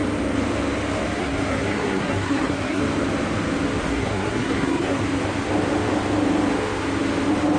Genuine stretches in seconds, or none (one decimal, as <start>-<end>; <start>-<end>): 0.0-1.2; 2.8-3.8; 5.0-7.6